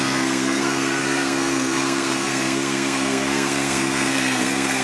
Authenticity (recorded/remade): remade